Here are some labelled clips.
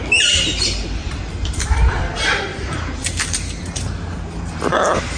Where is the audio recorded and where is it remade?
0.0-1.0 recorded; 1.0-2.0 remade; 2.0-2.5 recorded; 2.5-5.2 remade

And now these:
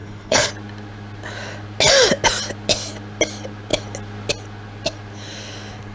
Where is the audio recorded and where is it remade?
0.0-0.5 remade; 0.5-5.9 recorded

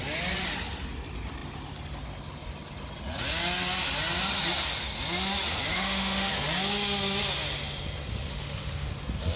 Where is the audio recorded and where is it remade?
0.0-5.7 recorded; 5.7-6.3 remade; 6.3-8.3 recorded; 8.3-8.9 remade; 8.9-9.4 recorded

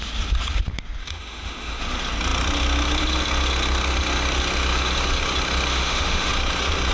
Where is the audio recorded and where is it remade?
0.0-1.0 recorded; 1.0-1.8 remade; 1.8-5.7 recorded; 5.7-6.3 remade; 6.3-6.9 recorded

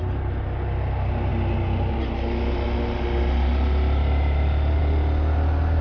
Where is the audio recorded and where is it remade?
0.0-5.8 recorded